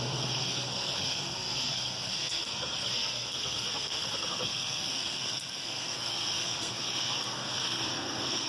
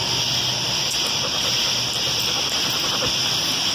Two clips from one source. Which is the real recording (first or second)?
second